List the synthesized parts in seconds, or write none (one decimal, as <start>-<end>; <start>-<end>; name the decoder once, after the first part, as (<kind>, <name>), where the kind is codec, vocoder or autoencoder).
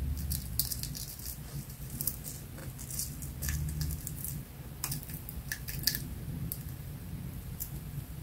none